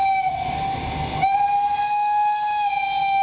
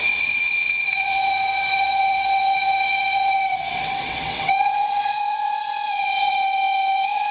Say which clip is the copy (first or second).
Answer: second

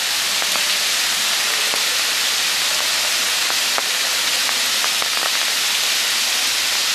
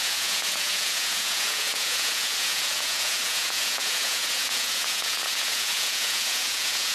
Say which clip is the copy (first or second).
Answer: second